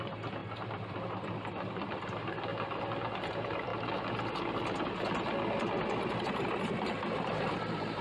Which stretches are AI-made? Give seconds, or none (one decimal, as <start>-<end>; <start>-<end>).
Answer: 0.0-2.5; 3.3-3.7; 6.2-8.0